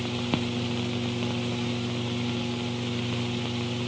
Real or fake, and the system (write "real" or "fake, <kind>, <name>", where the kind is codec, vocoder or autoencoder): real